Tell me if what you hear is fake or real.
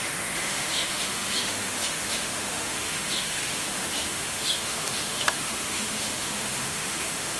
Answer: fake